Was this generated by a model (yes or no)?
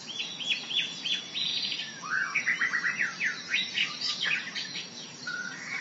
yes